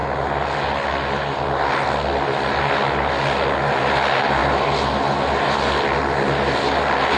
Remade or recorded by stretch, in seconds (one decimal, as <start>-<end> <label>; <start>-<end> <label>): 0.0-7.2 recorded